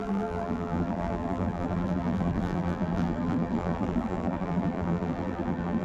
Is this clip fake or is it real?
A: fake